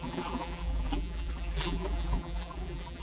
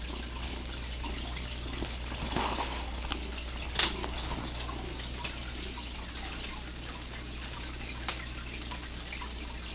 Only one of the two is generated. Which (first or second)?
first